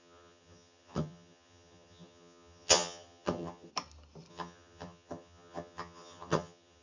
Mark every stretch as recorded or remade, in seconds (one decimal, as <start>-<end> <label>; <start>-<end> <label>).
0.0-3.7 remade; 3.7-4.3 recorded; 4.3-6.8 remade